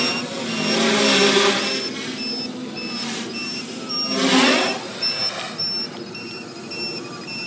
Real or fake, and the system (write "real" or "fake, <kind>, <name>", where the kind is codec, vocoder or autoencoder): real